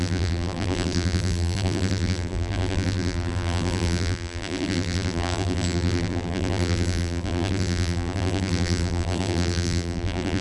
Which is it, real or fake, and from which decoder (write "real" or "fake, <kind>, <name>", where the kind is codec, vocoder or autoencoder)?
fake, vocoder, BigVGAN v2